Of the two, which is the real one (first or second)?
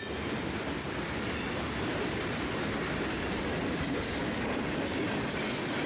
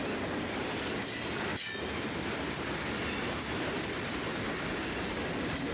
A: second